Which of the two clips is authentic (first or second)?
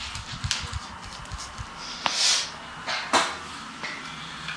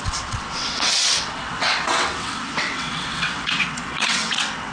first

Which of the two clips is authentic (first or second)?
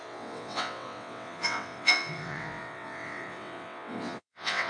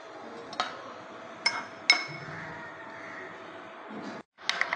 second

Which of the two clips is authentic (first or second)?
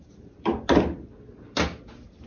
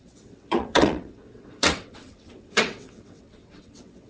first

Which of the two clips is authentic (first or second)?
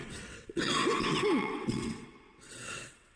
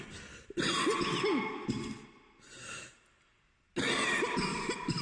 second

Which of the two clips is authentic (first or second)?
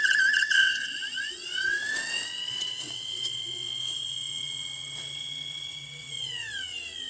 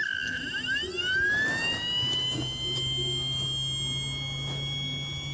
second